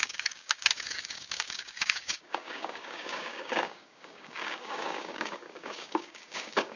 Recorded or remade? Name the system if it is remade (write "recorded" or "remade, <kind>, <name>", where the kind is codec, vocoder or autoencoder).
remade, codec, DAC